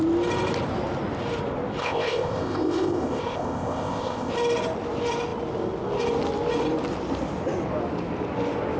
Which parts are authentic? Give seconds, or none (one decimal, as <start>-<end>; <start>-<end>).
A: 0.0-1.8; 4.3-8.8